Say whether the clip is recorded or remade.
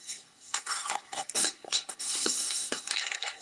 remade